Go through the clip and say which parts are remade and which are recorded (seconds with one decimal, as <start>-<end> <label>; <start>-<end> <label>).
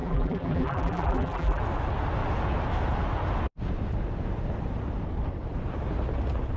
0.0-1.6 remade; 1.6-6.6 recorded